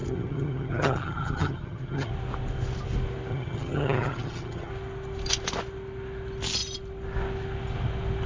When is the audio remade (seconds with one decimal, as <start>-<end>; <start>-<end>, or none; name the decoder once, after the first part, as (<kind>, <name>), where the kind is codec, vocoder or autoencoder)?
0.0-2.1 (vocoder, HiFi-GAN); 3.3-4.7